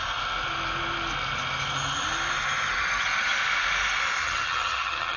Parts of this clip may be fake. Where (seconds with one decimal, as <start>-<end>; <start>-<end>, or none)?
4.2-5.2

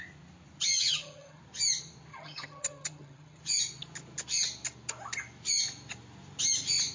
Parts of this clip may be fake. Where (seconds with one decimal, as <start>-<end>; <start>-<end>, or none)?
0.6-1.4; 2.1-3.4

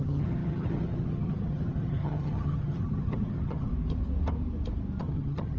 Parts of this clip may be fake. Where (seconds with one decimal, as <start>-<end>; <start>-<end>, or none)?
0.0-3.7; 5.0-5.6

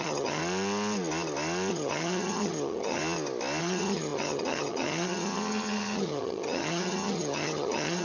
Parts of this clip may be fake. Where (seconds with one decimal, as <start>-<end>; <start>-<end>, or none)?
0.0-0.4; 1.7-3.0; 3.6-8.0

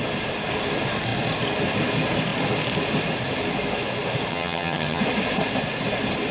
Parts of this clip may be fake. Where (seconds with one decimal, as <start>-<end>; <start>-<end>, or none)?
4.3-5.0

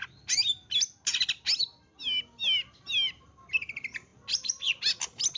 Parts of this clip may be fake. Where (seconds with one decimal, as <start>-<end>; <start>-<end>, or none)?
none

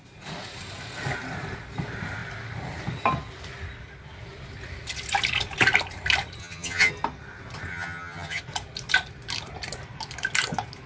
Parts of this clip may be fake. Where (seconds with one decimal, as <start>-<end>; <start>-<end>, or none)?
6.4-6.9; 7.7-8.4